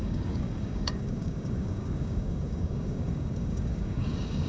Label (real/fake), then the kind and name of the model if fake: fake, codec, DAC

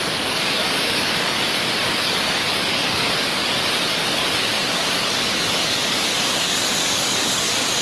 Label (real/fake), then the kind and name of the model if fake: fake, codec, DAC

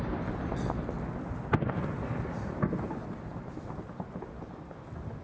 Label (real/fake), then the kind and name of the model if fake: real